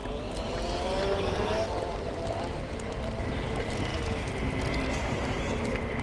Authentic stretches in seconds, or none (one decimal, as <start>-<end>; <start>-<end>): 0.0-6.0